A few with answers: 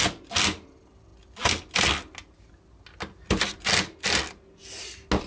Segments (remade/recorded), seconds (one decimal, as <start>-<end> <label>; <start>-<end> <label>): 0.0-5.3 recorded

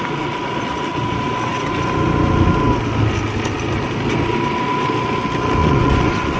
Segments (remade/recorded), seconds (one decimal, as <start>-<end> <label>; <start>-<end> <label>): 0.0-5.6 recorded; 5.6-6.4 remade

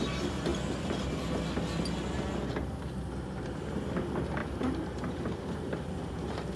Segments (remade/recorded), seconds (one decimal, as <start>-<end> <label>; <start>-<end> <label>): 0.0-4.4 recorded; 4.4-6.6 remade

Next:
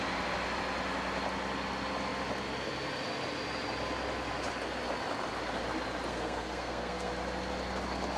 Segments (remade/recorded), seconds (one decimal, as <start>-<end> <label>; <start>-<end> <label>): 0.0-6.1 recorded; 6.1-7.1 remade; 7.1-8.2 recorded

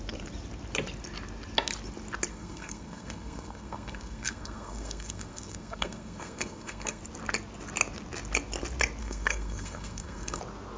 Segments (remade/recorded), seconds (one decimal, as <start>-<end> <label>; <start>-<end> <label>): 0.0-2.3 recorded; 2.3-7.0 remade; 7.0-9.0 recorded; 9.0-10.4 remade; 10.4-10.8 recorded